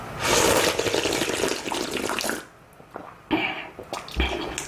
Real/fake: real